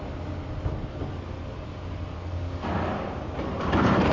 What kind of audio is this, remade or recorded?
recorded